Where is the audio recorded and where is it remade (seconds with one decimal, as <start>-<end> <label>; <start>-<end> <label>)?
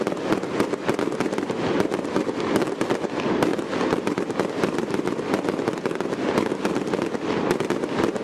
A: 0.0-8.2 recorded